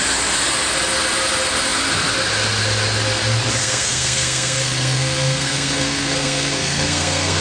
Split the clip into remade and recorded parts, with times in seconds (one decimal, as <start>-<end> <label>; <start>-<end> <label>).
0.0-3.6 recorded; 3.6-7.4 remade